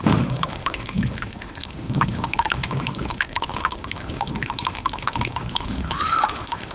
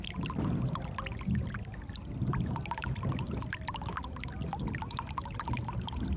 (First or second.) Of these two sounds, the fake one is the first